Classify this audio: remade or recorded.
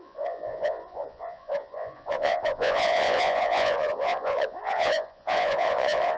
remade